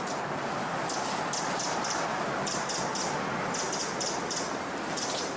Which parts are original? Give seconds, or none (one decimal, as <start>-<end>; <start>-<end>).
none